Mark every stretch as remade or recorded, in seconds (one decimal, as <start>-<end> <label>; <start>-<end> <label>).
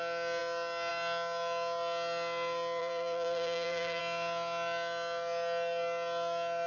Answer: 0.0-2.8 recorded; 2.8-4.0 remade; 4.0-6.7 recorded